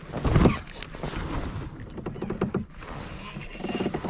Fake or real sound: real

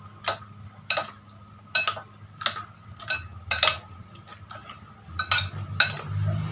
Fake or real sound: real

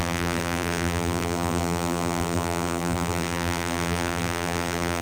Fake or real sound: fake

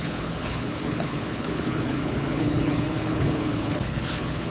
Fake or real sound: fake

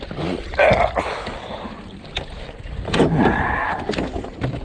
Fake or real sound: real